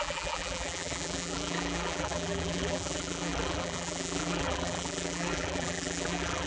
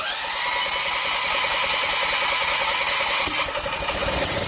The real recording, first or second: second